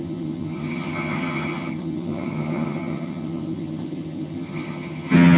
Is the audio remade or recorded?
remade